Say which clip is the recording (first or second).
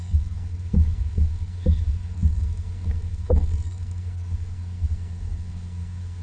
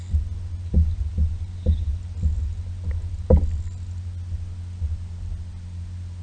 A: second